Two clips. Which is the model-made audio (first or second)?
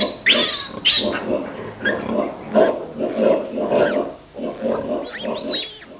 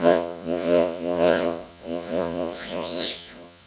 second